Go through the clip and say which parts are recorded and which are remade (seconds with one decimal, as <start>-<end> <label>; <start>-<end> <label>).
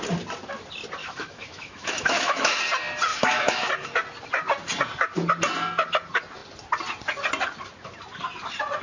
0.0-1.0 recorded; 1.0-2.6 remade; 2.6-3.1 recorded; 3.1-3.7 remade; 3.7-8.8 recorded